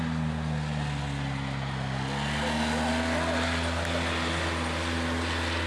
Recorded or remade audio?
recorded